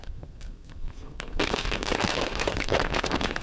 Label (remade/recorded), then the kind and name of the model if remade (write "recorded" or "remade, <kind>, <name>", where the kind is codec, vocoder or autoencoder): remade, codec, SNAC